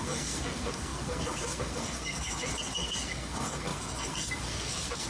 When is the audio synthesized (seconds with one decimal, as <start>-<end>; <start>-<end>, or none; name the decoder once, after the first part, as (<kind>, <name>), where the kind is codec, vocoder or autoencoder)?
0.0-5.1 (codec, SNAC)